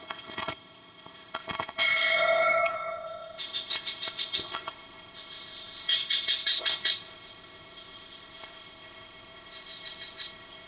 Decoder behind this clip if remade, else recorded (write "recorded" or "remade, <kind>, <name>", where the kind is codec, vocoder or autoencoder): remade, codec, ZipCodec